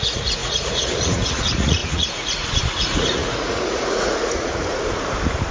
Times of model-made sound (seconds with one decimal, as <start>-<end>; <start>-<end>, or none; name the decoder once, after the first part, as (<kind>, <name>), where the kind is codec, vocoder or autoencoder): 0.0-4.6 (vocoder, Vocos)